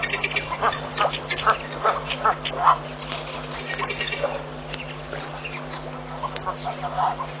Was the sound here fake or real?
real